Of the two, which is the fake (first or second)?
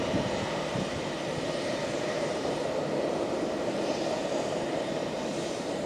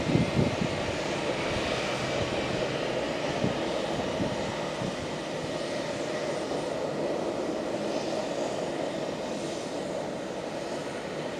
first